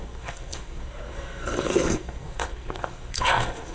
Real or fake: fake